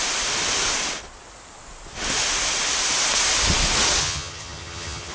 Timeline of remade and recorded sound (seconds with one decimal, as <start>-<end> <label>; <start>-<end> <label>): 0.0-4.0 recorded; 4.0-5.1 remade